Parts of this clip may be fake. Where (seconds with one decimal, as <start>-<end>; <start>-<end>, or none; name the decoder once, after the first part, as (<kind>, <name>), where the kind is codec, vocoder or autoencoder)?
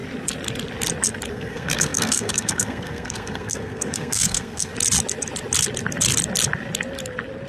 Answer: 1.3-4.7 (codec, SNAC)